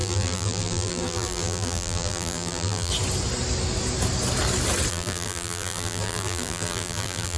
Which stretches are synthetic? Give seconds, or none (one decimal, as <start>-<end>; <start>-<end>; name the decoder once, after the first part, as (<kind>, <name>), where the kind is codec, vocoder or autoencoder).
0.0-2.9 (vocoder, BigVGAN v2); 4.9-7.4